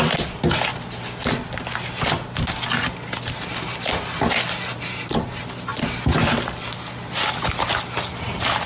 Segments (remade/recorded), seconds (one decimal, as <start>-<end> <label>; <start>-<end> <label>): 0.0-8.7 recorded